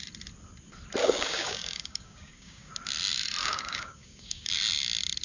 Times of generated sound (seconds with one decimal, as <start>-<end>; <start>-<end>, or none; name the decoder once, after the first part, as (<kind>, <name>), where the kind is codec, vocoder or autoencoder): 1.0-2.7 (codec, DAC); 3.4-4.5